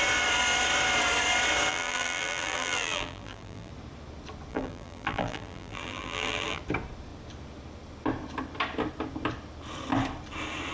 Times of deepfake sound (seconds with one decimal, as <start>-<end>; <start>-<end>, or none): 1.7-3.7; 4.5-6.6